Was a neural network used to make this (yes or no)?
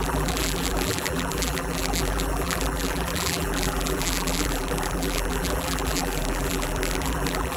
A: yes